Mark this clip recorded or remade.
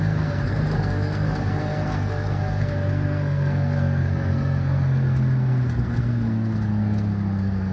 remade